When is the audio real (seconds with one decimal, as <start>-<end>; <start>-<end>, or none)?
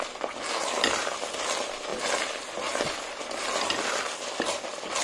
0.0-5.0